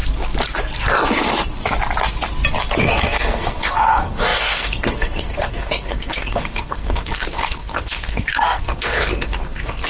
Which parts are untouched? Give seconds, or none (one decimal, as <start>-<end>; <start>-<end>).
0.0-2.8